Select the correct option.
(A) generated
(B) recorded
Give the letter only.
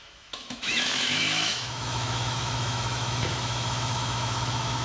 A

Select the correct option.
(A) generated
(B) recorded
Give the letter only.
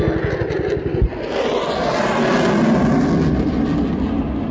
B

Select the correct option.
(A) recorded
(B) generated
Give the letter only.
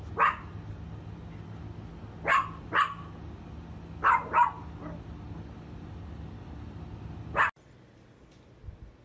A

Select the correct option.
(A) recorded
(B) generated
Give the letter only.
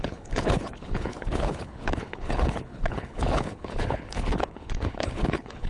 B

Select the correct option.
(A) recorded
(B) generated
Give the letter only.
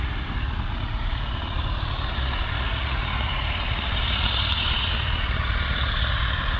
B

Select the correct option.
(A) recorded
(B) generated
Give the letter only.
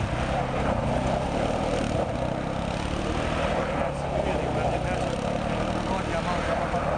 A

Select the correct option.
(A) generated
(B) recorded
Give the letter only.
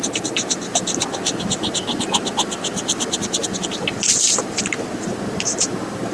B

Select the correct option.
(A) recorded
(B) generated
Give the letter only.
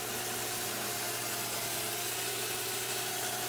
A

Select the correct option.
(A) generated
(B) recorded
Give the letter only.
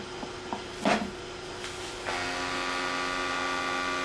B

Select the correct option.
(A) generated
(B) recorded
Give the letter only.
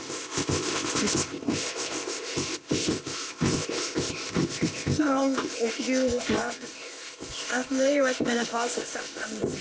A